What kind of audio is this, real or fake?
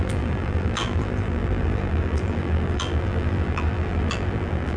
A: fake